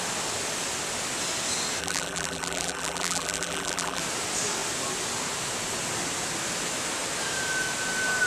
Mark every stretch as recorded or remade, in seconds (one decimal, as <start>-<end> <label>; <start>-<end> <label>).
0.0-1.8 recorded; 1.8-4.0 remade; 4.0-8.3 recorded